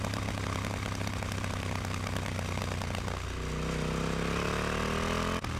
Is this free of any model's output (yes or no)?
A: yes